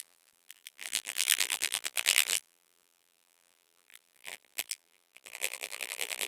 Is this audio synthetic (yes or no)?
yes